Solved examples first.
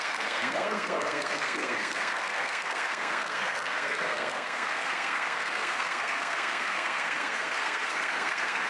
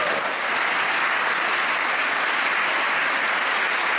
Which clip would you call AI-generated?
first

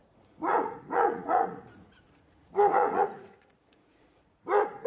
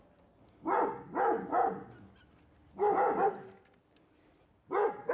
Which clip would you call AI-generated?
first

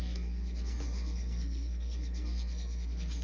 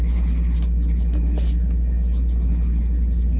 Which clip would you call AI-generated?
first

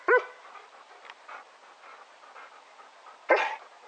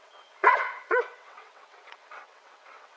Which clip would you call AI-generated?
second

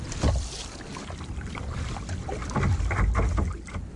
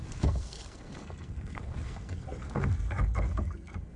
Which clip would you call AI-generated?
second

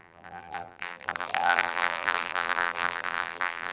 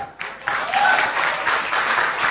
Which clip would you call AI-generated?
first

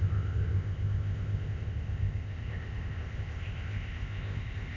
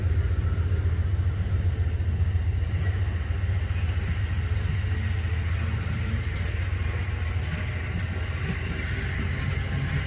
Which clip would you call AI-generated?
first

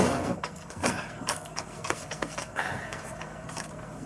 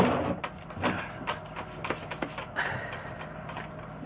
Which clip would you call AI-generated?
first